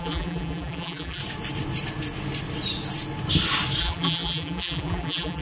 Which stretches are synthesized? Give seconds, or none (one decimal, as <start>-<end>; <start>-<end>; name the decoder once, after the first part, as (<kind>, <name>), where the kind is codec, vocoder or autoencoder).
0.0-1.2 (vocoder, BigVGAN v2); 3.8-5.4